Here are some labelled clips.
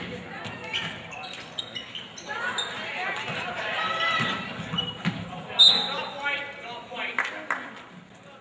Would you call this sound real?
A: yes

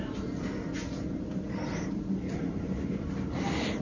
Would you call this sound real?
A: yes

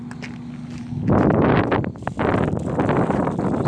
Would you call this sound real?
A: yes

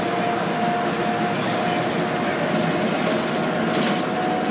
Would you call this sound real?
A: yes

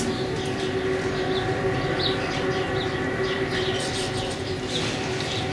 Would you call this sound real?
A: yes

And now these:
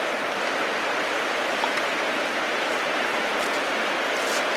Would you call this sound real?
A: yes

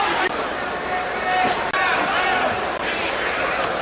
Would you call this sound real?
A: yes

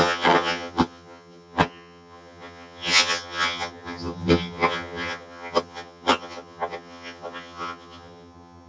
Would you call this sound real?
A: no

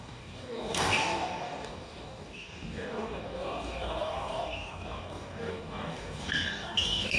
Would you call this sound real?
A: no